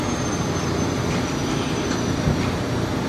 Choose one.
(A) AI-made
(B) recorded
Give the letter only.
B